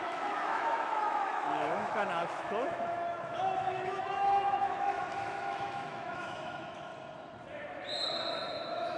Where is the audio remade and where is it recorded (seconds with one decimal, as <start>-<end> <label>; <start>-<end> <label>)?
0.0-6.9 remade; 6.9-8.5 recorded; 8.5-9.0 remade